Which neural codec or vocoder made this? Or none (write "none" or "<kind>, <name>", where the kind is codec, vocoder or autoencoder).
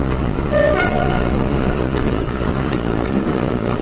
vocoder, Vocos